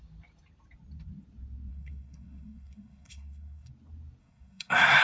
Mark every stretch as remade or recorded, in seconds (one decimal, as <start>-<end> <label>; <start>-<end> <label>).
0.0-1.7 recorded; 1.7-3.7 remade; 3.7-4.2 recorded; 4.2-5.0 remade